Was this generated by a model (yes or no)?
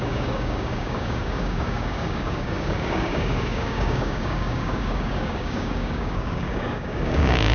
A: yes